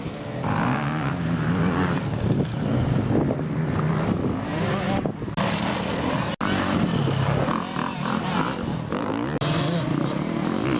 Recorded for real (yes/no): yes